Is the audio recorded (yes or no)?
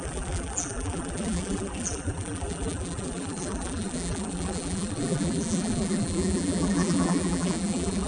no